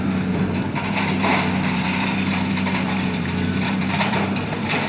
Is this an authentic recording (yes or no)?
no